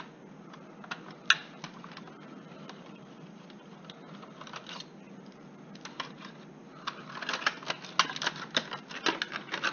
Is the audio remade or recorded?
recorded